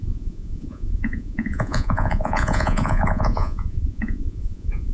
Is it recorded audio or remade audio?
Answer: remade